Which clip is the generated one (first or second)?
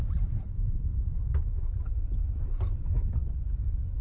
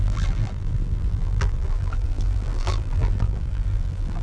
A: second